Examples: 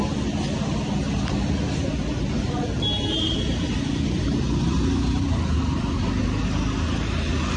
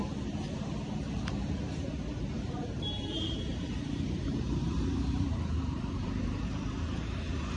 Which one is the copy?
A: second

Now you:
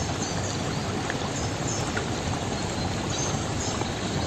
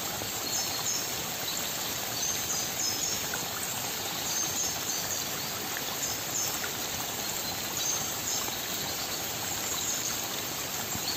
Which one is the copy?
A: second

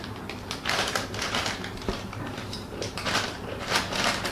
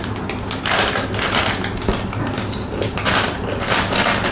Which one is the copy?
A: first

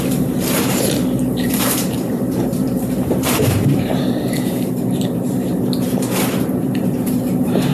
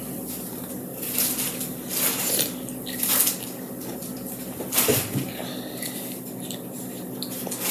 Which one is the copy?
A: first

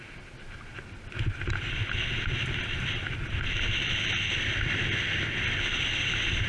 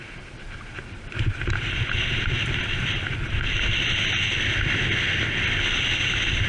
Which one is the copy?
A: second